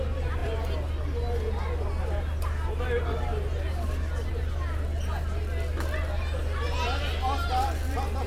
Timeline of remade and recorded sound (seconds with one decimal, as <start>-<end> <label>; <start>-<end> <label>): 0.0-8.3 recorded